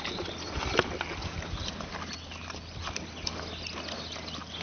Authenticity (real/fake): real